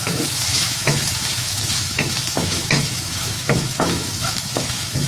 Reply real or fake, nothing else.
fake